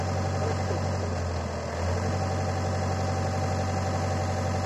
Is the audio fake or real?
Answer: real